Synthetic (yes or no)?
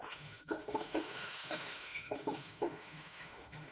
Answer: yes